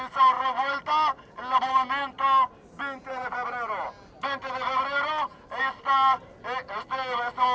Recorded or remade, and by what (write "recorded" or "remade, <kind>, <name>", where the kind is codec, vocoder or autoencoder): recorded